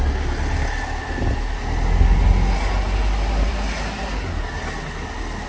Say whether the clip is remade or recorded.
recorded